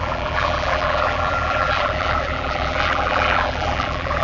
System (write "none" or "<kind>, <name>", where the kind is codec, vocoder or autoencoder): vocoder, BigVGAN v2